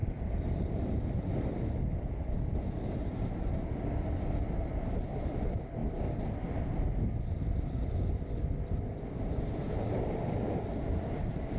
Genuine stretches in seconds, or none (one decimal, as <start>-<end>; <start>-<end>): 1.3-5.8; 6.6-11.6